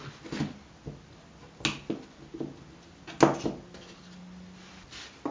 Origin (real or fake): real